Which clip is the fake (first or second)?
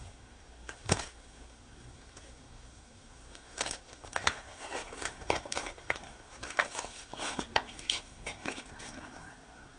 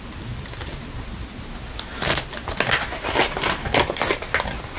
first